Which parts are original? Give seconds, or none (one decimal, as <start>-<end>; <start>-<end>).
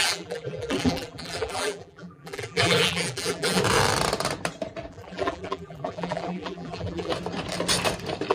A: 3.6-4.9; 7.1-8.3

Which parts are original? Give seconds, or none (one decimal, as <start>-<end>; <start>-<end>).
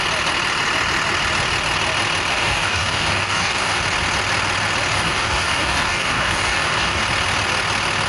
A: 0.0-2.3; 3.8-4.9; 7.0-8.1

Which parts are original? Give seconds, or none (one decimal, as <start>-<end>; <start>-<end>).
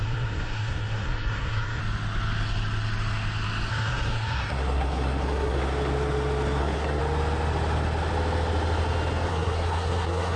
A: 1.8-3.7; 5.6-6.6; 7.0-9.3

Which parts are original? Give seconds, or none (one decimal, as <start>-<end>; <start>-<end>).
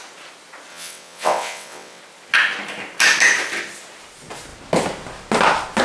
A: 0.0-0.7; 2.0-5.8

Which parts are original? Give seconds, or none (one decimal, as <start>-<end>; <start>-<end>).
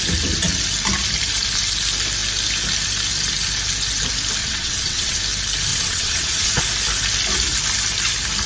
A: 0.0-4.4; 5.2-5.7; 6.6-8.5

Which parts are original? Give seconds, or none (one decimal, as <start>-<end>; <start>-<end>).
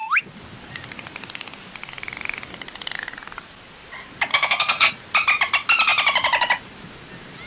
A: 0.0-4.3; 4.9-7.5